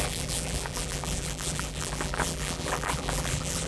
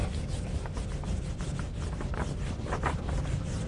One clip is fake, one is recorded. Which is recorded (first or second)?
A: second